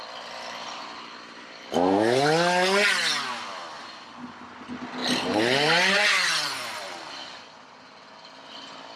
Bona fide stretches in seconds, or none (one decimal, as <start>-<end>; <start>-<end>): 0.0-0.6; 2.3-5.0; 7.1-9.0